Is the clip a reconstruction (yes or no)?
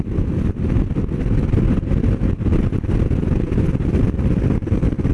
no